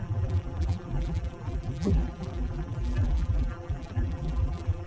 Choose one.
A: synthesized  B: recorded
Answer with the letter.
A